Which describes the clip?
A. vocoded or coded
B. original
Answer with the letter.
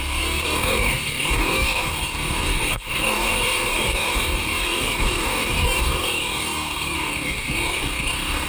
A